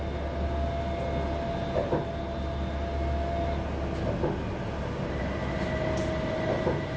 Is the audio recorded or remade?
recorded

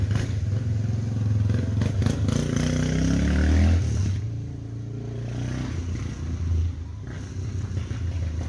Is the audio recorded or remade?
recorded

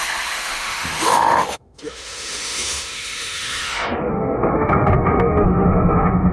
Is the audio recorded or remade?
remade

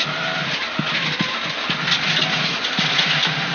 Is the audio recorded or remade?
recorded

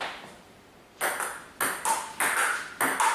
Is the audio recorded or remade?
recorded